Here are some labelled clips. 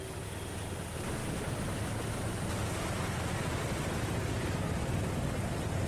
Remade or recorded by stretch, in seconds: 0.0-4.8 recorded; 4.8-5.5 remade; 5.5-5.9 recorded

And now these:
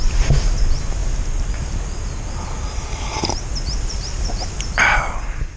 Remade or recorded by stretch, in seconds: 0.0-5.6 recorded

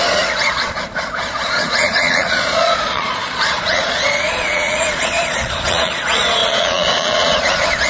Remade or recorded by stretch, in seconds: 0.0-7.9 remade

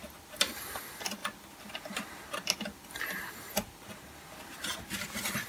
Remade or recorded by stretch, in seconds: 0.0-5.5 recorded

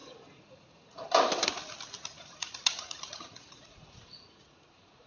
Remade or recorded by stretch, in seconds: 0.0-1.1 remade; 1.1-2.4 recorded; 2.4-5.1 remade

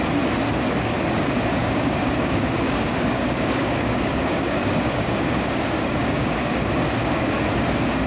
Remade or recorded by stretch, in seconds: 0.0-1.6 recorded; 1.6-6.5 remade; 6.5-7.0 recorded; 7.0-7.5 remade; 7.5-8.1 recorded

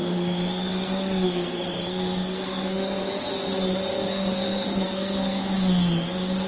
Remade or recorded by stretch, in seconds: 0.0-3.0 remade; 3.0-3.9 recorded; 3.9-5.4 remade; 5.4-6.5 recorded